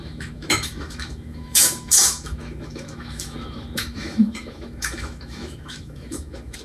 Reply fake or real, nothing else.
fake